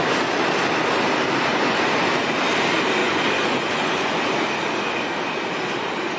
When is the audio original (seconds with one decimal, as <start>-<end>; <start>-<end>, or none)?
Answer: 0.0-1.5; 2.1-3.0; 4.2-6.2